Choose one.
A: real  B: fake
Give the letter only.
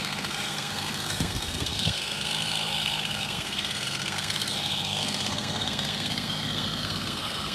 B